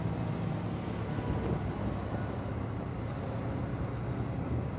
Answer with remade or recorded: recorded